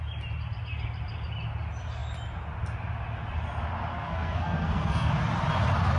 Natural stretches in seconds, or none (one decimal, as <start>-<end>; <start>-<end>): 0.0-3.9; 5.1-6.0